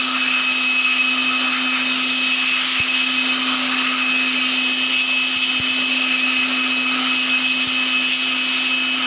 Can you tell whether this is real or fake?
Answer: real